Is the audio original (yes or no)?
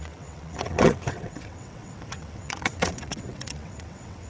no